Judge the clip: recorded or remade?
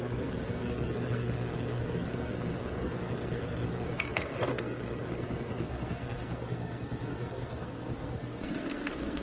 remade